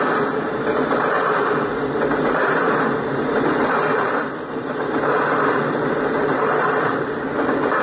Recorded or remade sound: remade